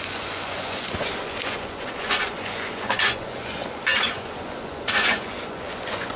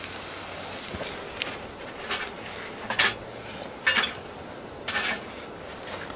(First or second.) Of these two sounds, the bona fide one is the second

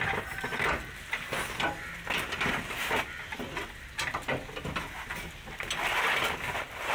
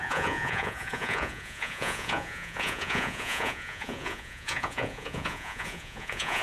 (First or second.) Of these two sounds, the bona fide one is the first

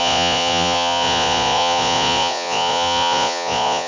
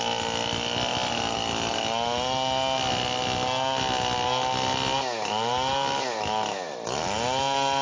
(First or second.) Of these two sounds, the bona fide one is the second